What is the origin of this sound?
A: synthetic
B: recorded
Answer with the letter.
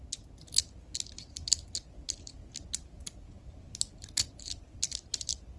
B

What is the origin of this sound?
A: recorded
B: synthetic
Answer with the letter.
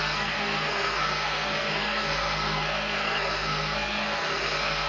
B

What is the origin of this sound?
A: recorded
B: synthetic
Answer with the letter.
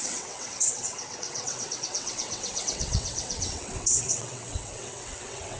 B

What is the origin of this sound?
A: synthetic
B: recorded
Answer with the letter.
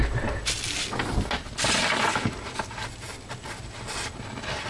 B